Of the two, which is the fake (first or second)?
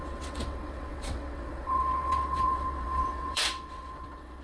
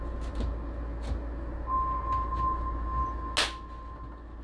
first